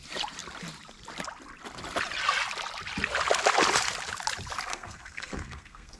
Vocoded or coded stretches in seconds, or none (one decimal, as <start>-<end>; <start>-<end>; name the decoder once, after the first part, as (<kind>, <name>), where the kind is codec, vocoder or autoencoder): 4.7-6.0 (codec, SNAC)